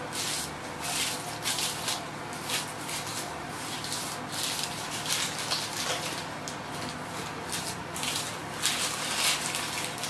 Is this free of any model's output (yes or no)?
yes